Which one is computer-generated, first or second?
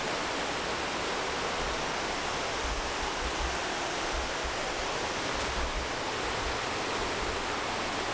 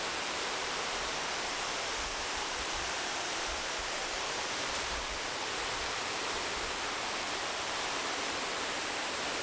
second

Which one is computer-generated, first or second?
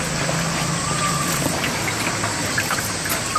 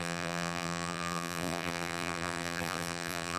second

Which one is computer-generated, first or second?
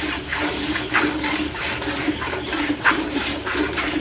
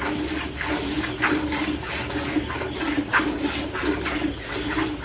first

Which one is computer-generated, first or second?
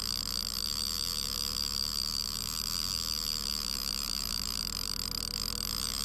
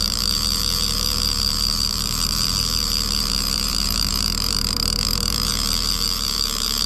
second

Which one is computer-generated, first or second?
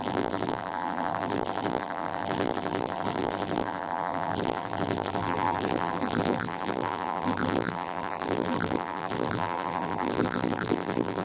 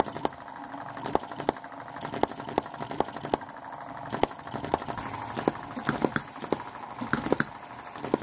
first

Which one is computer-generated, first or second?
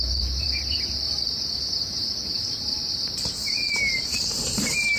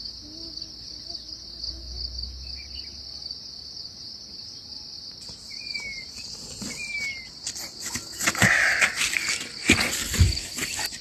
first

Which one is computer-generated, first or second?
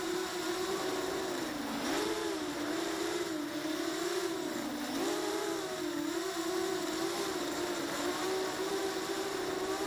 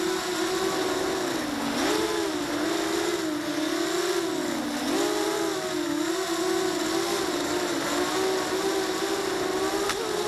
first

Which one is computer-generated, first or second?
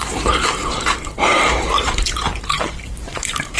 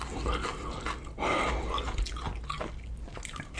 first